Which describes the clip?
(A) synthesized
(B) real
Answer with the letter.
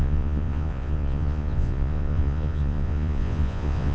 A